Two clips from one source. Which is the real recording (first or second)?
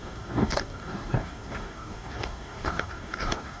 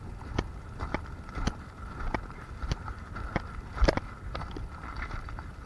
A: second